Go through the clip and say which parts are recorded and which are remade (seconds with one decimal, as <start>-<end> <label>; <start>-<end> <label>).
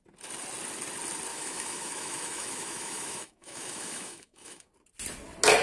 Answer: 0.0-1.3 recorded; 1.3-4.7 remade; 4.7-5.6 recorded